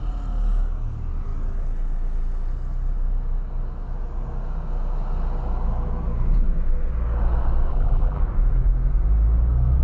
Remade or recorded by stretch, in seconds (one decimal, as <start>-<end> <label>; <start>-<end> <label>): 0.0-7.7 recorded; 7.7-8.2 remade; 8.2-9.8 recorded